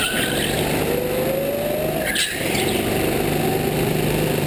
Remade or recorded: recorded